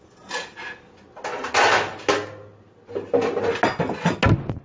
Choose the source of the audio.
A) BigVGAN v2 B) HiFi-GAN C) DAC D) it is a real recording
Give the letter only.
D